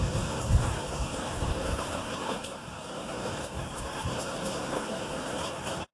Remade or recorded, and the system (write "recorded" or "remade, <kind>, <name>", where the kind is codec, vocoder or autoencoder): remade, codec, SNAC